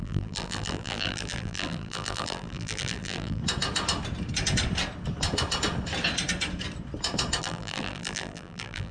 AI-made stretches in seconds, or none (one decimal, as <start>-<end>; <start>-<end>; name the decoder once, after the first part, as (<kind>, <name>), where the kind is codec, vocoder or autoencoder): 0.0-3.4 (vocoder, BigVGAN v2); 7.4-8.9